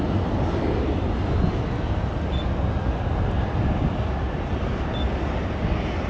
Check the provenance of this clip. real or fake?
real